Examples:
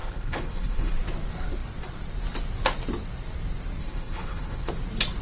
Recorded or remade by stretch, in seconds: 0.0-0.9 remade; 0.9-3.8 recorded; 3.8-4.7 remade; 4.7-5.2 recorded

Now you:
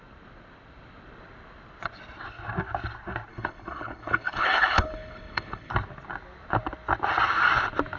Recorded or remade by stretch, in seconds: 0.0-3.3 recorded; 3.3-5.7 remade; 5.7-8.0 recorded

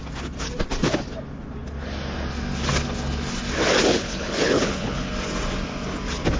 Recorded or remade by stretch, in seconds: 0.0-3.9 recorded; 3.9-5.1 remade; 5.1-6.4 recorded